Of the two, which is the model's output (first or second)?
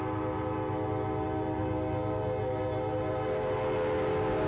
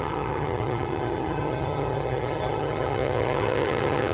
second